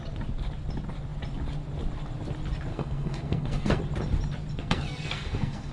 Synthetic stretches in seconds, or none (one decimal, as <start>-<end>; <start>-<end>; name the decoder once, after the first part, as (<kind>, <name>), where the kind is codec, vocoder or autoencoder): 2.7-3.8 (codec, SNAC); 4.6-5.7

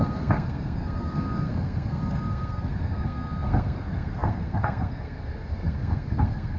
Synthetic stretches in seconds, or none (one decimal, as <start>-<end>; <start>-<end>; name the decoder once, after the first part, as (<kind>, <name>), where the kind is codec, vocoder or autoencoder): 0.0-6.6 (codec, SNAC)

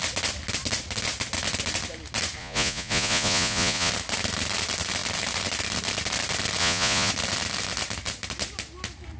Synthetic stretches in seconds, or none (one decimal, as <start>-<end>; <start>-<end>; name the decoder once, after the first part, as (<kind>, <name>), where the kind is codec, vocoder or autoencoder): 2.4-3.9 (vocoder, Vocos); 6.6-7.1

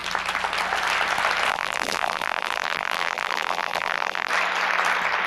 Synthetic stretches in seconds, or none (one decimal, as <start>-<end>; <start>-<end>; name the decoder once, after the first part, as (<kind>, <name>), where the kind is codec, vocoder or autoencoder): 1.5-4.3 (vocoder, BigVGAN v2)

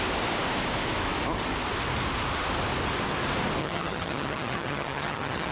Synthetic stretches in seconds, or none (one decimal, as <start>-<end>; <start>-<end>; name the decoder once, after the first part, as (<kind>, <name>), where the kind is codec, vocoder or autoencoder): 3.6-5.5 (vocoder, HiFi-GAN)

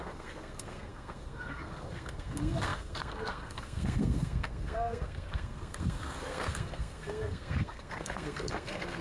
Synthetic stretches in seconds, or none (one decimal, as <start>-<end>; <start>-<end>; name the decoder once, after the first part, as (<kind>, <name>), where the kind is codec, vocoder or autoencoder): 0.0-9.0 (codec, SNAC)

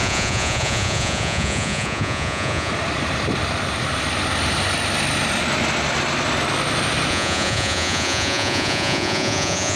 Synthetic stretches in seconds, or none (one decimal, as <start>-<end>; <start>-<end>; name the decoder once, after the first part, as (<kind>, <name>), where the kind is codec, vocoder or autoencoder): 0.0-2.7 (vocoder, Vocos); 7.1-9.8